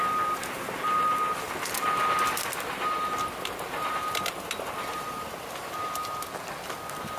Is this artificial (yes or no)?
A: no